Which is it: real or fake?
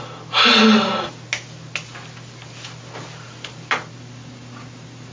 real